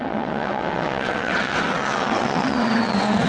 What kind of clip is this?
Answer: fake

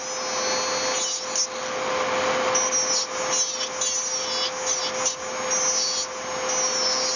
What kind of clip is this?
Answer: real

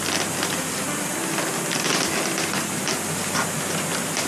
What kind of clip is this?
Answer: real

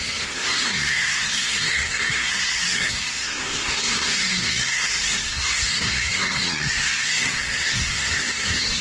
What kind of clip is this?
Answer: fake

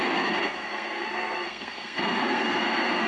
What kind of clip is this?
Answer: fake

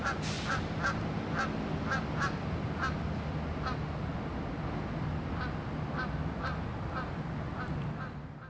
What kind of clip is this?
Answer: real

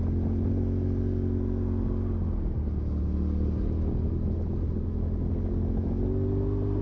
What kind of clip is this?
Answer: real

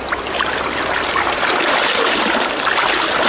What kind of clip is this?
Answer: real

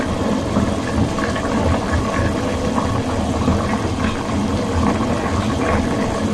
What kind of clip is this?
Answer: real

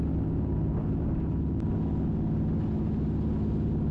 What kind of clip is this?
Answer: real